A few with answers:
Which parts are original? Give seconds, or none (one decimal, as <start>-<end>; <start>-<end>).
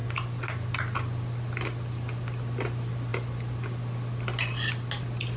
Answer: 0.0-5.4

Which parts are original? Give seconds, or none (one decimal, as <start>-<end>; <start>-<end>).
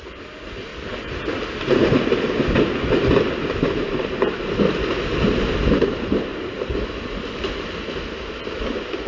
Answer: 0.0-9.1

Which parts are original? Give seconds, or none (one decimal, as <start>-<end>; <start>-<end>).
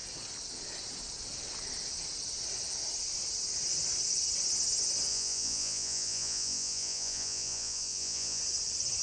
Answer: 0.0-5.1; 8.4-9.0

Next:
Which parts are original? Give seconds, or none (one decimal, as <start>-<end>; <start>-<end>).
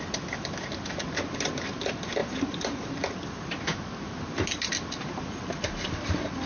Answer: 0.0-2.2; 6.1-6.5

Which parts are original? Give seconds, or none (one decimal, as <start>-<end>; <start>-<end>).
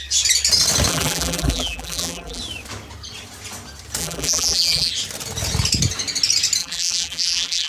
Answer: 0.0-0.9; 2.4-4.0; 4.9-6.6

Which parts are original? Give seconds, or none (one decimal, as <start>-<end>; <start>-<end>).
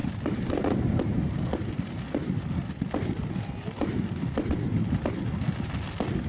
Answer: 0.0-6.3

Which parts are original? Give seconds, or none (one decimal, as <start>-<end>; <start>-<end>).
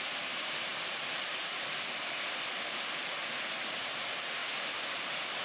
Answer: 0.0-0.7; 1.4-5.4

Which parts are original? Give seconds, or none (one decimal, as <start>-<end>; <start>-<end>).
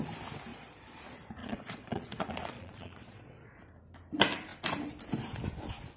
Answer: 0.0-0.5; 1.0-1.4; 3.6-6.0